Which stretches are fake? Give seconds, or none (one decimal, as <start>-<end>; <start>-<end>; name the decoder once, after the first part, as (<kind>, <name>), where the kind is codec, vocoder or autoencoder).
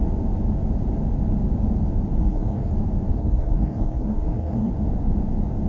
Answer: 2.2-2.7 (codec, SNAC); 3.1-4.7